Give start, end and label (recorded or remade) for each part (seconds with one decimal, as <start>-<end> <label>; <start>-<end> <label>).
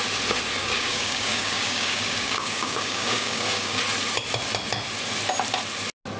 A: 0.0-0.6 recorded; 0.6-3.8 remade; 3.8-6.2 recorded